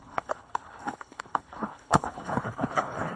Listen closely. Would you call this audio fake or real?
fake